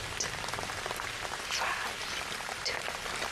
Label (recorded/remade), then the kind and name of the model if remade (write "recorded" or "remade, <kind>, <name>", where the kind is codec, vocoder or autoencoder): recorded